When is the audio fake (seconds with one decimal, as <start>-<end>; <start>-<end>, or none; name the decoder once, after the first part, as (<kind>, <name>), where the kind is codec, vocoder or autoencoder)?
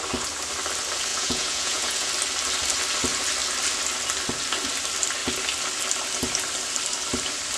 1.1-2.1 (vocoder, Vocos)